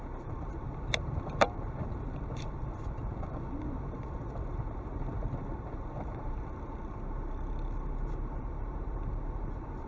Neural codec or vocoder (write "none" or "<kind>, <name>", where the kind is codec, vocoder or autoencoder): vocoder, BigVGAN v2